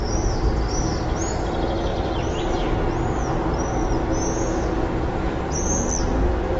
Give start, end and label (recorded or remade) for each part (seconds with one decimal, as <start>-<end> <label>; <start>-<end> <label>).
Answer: 0.0-0.5 remade; 0.5-1.9 recorded; 1.9-2.4 remade; 2.4-6.6 recorded